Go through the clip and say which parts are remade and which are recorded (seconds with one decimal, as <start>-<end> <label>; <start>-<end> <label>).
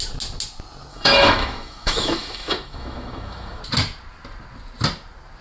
0.0-0.9 recorded; 0.9-3.6 remade; 3.6-5.4 recorded